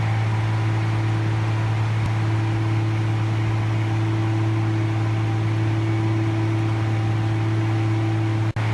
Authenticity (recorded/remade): recorded